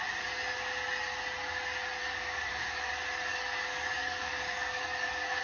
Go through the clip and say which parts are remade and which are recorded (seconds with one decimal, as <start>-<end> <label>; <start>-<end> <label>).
0.0-2.0 recorded; 2.0-2.9 remade; 2.9-3.3 recorded; 3.3-5.4 remade